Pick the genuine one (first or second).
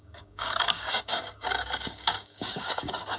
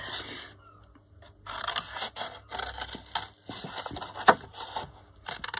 second